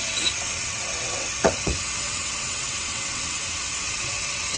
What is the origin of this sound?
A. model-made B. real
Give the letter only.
A